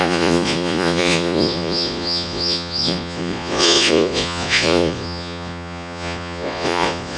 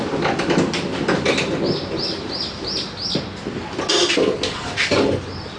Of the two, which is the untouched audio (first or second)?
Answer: second